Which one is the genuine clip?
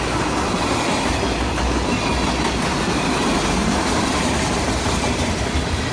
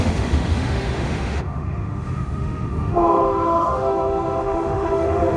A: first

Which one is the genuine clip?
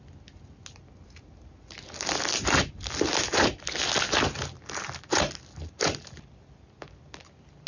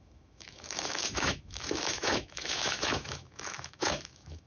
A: first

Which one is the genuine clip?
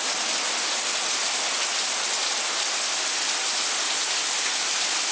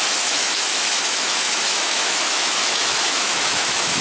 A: first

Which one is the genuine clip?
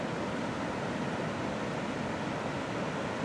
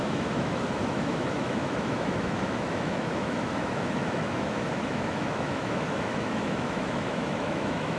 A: first